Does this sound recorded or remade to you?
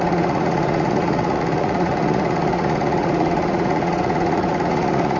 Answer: remade